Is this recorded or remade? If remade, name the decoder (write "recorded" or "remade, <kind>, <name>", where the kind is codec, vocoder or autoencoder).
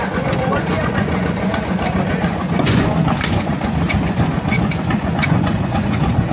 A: remade, vocoder, Vocos